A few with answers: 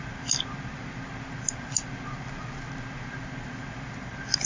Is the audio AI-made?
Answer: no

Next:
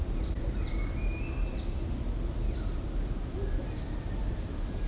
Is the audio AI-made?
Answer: no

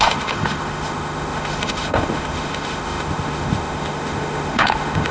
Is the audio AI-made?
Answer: yes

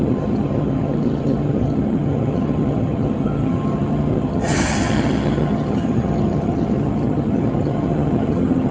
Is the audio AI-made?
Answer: yes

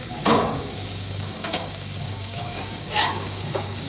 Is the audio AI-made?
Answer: yes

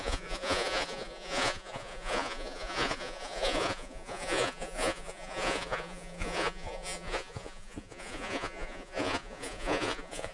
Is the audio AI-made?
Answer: yes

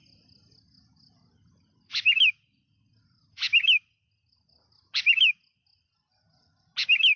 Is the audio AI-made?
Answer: no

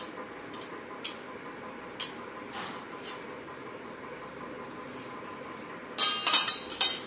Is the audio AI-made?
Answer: no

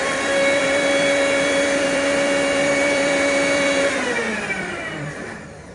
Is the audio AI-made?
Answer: yes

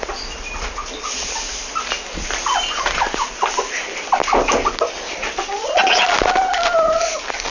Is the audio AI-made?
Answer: no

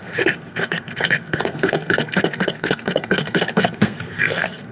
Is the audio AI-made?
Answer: yes